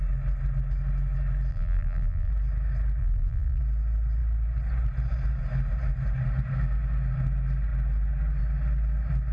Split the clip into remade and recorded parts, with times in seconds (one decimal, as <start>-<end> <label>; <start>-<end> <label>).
0.0-1.5 recorded; 1.5-2.3 remade; 2.3-3.0 recorded; 3.0-3.6 remade; 3.6-9.3 recorded